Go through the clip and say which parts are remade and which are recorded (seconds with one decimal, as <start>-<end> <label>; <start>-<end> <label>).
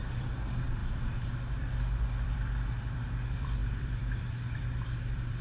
0.0-5.4 remade